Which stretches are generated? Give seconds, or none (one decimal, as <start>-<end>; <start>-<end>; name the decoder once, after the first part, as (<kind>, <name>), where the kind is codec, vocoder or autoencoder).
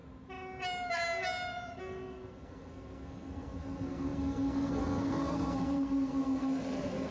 1.8-7.1 (codec, SNAC)